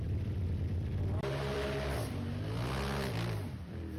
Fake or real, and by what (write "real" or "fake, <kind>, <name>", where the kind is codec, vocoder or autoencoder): fake, vocoder, BigVGAN v2